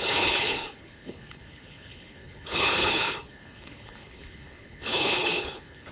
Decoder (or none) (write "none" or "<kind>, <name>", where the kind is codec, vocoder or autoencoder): codec, HILCodec